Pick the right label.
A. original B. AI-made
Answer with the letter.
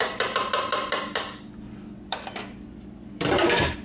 B